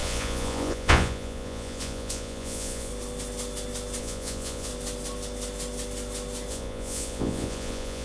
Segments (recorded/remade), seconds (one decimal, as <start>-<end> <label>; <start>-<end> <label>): 0.0-2.9 remade; 2.9-4.0 recorded; 4.0-4.7 remade; 4.7-6.5 recorded; 6.5-8.0 remade